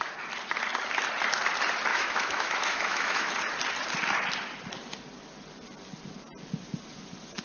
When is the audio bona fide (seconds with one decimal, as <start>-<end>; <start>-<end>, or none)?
0.0-1.9; 3.3-7.4